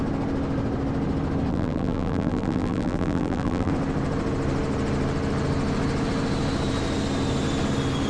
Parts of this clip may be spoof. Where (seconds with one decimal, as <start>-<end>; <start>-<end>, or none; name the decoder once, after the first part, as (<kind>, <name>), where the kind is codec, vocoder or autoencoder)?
1.5-3.7 (vocoder, BigVGAN v2)